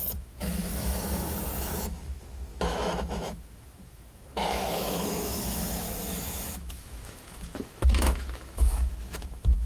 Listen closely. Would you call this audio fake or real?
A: fake